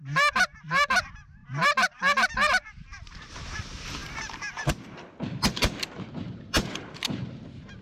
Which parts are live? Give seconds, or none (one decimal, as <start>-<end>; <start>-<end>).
none